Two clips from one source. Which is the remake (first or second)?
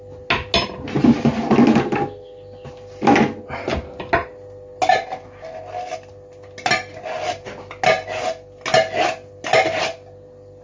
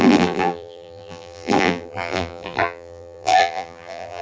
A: second